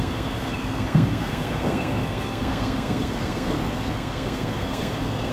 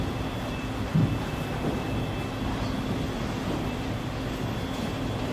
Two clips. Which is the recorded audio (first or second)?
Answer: second